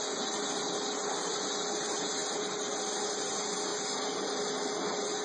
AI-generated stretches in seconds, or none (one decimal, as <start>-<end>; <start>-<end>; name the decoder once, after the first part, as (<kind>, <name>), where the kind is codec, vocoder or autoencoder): none